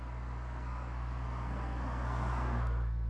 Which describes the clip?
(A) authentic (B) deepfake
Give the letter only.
B